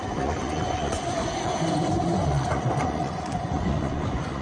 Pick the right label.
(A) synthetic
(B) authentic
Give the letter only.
A